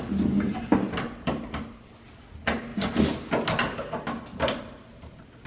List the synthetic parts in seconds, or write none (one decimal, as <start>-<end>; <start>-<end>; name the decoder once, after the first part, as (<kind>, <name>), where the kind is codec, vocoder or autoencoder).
none